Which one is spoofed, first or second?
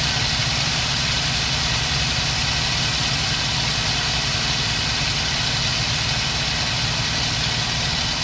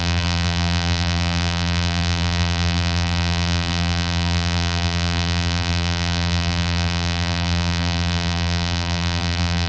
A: second